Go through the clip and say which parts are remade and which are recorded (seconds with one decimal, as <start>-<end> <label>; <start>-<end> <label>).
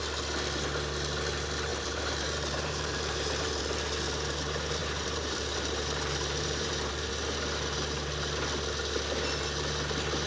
0.0-1.7 recorded; 1.7-3.6 remade; 3.6-4.8 recorded; 4.8-7.1 remade; 7.1-10.3 recorded